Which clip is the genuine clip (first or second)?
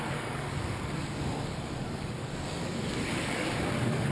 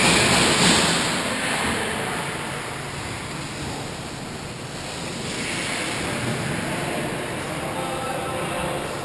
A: second